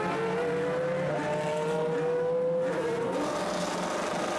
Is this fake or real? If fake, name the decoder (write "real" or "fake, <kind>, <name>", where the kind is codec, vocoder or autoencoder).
real